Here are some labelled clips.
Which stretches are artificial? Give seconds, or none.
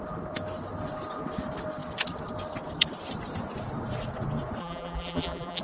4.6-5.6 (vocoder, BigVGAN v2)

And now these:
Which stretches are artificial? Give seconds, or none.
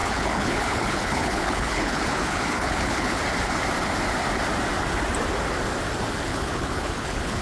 0.0-3.2 (codec, HILCodec); 6.3-7.4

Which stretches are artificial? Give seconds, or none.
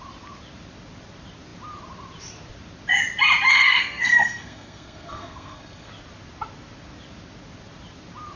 3.5-5.9 (codec, SNAC)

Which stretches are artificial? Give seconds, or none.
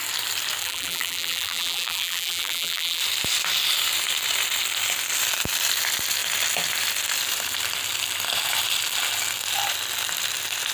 0.6-3.0 (vocoder, BigVGAN v2)